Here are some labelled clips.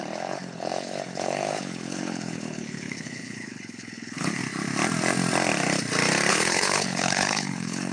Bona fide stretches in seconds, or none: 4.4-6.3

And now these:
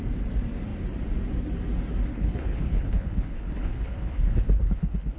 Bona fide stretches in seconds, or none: 0.0-2.1

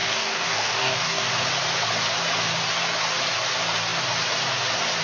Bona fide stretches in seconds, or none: 1.3-5.0

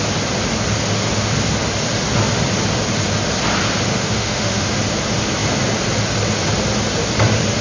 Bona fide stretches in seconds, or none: 0.0-3.9; 4.8-7.6

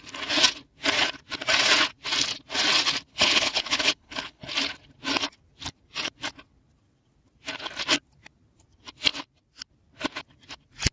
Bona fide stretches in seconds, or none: 0.0-3.1; 4.5-10.9